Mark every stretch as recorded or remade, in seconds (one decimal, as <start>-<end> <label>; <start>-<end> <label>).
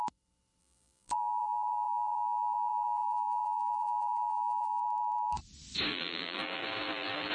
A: 0.0-0.6 recorded; 0.6-4.8 remade; 4.8-5.9 recorded; 5.9-7.3 remade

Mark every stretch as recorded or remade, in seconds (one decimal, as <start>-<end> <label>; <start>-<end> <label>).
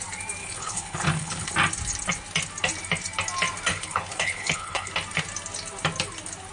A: 0.0-0.4 recorded; 0.4-1.5 remade; 1.5-3.7 recorded; 3.7-4.9 remade; 4.9-6.5 recorded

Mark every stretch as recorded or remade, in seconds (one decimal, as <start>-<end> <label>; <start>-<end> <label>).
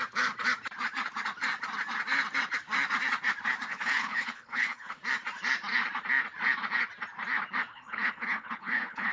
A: 0.0-3.7 recorded; 3.7-5.0 remade; 5.0-7.7 recorded; 7.7-9.1 remade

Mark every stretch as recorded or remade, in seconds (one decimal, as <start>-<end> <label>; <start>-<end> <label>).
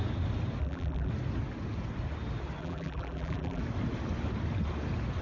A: 0.0-0.6 recorded; 0.6-1.1 remade; 1.1-2.6 recorded; 2.6-3.6 remade; 3.6-5.2 recorded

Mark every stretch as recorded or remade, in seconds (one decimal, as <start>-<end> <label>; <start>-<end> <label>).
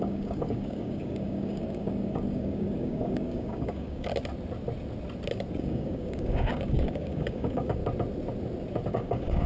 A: 0.0-4.1 remade; 4.1-5.5 recorded; 5.5-7.8 remade; 7.8-8.9 recorded; 8.9-9.5 remade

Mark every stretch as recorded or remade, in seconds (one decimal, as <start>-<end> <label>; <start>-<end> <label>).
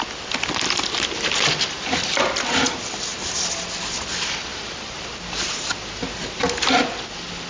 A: 0.0-7.5 recorded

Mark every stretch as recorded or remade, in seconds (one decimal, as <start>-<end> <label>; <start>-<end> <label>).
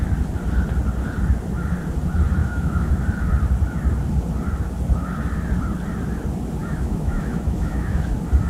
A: 0.0-2.4 recorded; 2.4-2.9 remade; 2.9-6.6 recorded; 6.6-8.1 remade; 8.1-8.5 recorded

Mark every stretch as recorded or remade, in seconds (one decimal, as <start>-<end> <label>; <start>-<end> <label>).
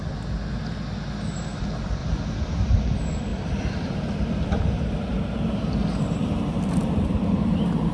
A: 0.0-3.3 recorded; 3.3-7.9 remade